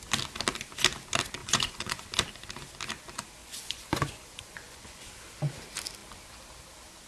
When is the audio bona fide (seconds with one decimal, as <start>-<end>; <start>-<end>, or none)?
0.0-1.4; 2.1-3.4; 5.1-7.1

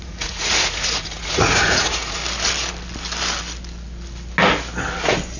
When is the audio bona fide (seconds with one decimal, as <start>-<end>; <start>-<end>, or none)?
2.2-5.4